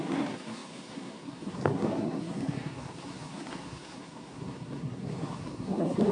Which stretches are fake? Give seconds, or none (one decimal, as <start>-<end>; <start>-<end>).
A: 0.0-6.1